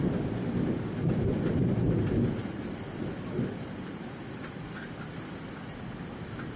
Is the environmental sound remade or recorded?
recorded